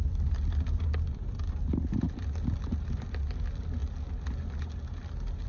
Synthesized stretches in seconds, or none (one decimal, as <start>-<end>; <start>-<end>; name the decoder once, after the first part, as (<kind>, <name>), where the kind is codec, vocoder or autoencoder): none